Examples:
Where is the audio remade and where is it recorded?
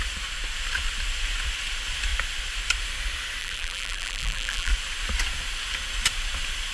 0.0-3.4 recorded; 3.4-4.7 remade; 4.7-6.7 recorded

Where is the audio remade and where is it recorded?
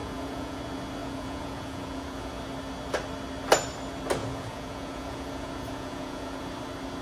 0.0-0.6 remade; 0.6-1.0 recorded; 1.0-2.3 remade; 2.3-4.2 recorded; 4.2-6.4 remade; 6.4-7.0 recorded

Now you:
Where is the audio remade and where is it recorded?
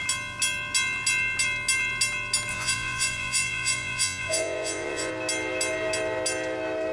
0.0-2.5 recorded; 2.5-5.1 remade; 5.1-6.9 recorded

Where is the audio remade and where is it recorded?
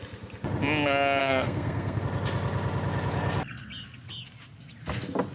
0.0-1.2 recorded; 1.2-2.0 remade; 2.0-5.3 recorded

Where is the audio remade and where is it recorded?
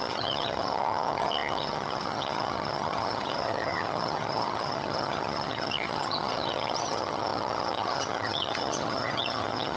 0.0-9.8 remade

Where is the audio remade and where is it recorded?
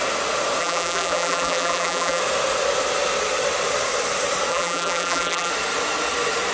0.0-0.6 recorded; 0.6-2.2 remade; 2.2-4.5 recorded; 4.5-5.5 remade; 5.5-6.5 recorded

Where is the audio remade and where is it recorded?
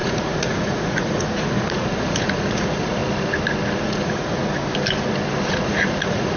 0.0-3.0 remade; 3.0-3.8 recorded; 3.8-4.4 remade; 4.4-5.5 recorded; 5.5-6.4 remade